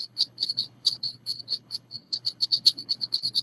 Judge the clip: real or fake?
fake